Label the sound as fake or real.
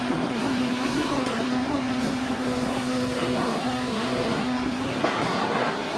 fake